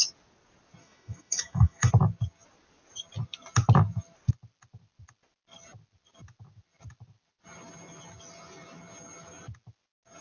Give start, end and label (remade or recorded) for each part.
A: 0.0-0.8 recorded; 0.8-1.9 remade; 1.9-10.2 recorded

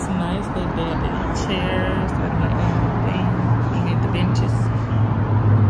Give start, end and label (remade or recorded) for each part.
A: 0.0-4.3 recorded; 4.3-4.9 remade; 4.9-5.7 recorded

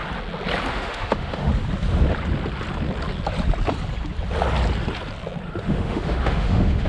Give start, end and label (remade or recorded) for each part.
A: 0.0-0.7 recorded; 0.7-1.5 remade; 1.5-5.6 recorded; 5.6-6.9 remade

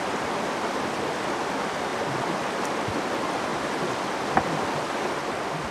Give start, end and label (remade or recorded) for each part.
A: 0.0-5.7 recorded

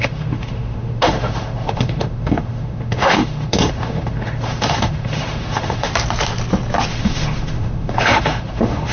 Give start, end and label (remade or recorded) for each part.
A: 0.0-5.9 remade; 5.9-6.9 recorded; 6.9-8.9 remade

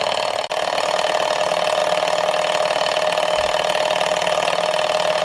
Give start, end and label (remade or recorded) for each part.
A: 0.0-5.2 recorded

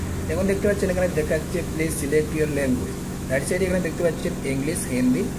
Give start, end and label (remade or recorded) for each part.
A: 0.0-1.1 recorded; 1.1-3.7 remade; 3.7-5.4 recorded

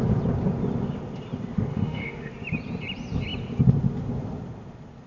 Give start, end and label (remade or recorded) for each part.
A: 0.0-1.7 recorded; 1.7-2.3 remade; 2.3-5.1 recorded